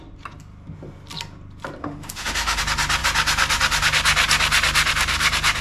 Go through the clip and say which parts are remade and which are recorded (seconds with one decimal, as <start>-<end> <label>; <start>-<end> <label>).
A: 0.0-1.8 recorded; 1.8-2.6 remade; 2.6-5.6 recorded